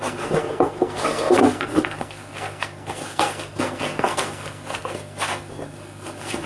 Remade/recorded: remade